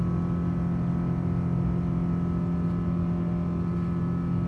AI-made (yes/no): no